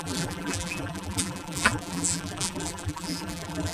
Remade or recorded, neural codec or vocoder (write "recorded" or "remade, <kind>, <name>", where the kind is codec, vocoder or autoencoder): remade, vocoder, BigVGAN v2